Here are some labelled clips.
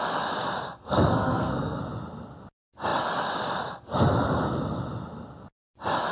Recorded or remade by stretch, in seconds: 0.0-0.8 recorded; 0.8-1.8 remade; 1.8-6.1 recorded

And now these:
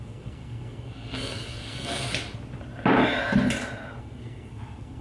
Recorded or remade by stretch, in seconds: 0.0-2.1 remade; 2.1-4.0 recorded; 4.0-5.0 remade

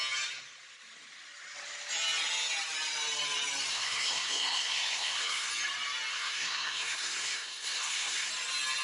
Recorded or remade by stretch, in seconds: 0.0-3.7 recorded; 3.7-5.5 remade; 5.5-6.1 recorded; 6.1-8.3 remade; 8.3-8.8 recorded

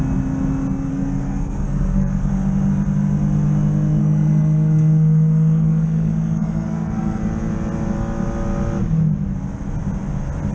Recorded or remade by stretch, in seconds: 0.0-0.9 recorded; 0.9-2.3 remade; 2.3-4.0 recorded; 4.0-7.2 remade; 7.2-10.5 recorded

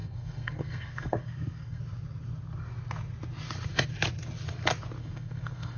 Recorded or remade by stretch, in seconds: 0.0-1.8 remade; 1.8-5.0 recorded; 5.0-5.8 remade

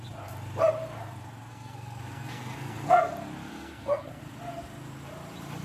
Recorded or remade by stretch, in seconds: 0.0-1.5 recorded; 1.5-3.1 remade; 3.1-3.5 recorded; 3.5-4.2 remade; 4.2-5.6 recorded

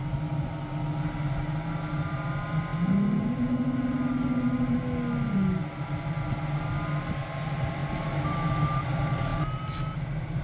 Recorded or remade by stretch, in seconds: 0.0-10.4 recorded